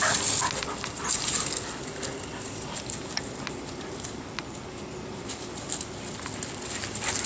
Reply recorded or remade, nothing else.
recorded